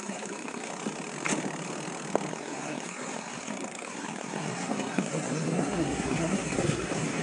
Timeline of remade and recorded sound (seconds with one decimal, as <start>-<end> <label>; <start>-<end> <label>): 0.0-0.7 remade; 0.7-2.3 recorded; 2.3-7.2 remade